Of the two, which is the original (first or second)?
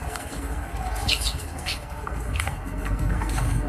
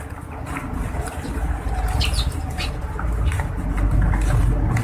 second